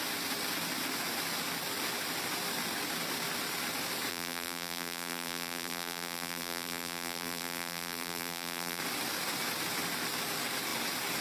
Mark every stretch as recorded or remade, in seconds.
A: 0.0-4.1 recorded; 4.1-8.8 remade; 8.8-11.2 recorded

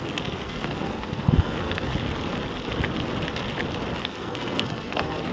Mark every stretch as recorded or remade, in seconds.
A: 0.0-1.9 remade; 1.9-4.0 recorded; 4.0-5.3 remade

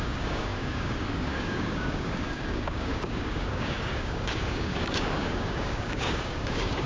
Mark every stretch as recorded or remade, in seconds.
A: 0.0-6.9 remade